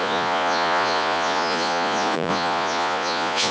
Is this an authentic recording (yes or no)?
no